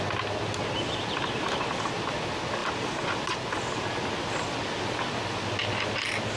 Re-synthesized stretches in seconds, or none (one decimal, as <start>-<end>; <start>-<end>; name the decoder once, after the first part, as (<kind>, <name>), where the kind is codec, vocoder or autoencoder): none